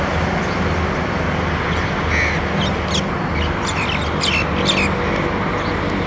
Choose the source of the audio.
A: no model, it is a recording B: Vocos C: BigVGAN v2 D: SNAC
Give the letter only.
A